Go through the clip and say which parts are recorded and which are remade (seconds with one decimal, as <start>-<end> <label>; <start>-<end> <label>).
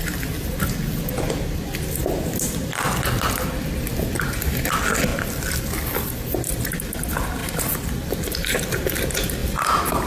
0.0-5.1 recorded; 5.1-6.6 remade; 6.6-7.4 recorded; 7.4-8.7 remade; 8.7-10.1 recorded